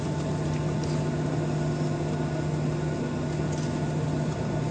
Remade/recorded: recorded